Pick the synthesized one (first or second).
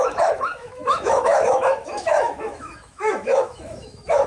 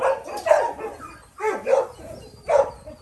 first